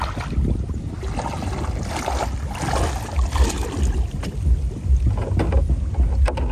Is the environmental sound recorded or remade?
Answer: recorded